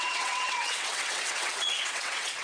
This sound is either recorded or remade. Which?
remade